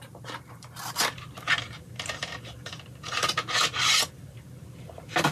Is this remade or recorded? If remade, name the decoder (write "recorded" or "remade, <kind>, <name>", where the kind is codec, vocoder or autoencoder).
remade, vocoder, BigVGAN v2